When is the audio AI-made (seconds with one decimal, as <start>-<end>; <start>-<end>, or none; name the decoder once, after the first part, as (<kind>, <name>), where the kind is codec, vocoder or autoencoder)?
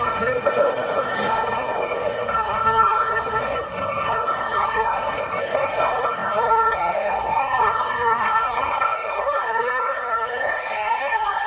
0.0-11.5 (codec, SNAC)